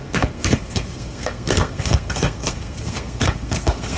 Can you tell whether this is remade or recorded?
remade